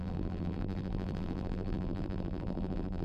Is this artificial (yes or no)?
yes